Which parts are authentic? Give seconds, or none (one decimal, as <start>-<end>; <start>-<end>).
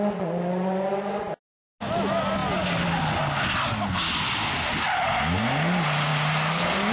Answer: 0.0-6.1